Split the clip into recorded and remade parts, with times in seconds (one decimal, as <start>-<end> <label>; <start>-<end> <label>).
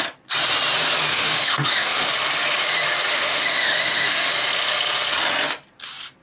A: 0.0-1.1 recorded; 1.1-2.1 remade; 2.1-3.1 recorded; 3.1-4.3 remade; 4.3-6.2 recorded